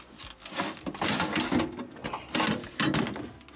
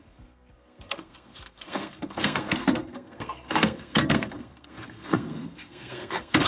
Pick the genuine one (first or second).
first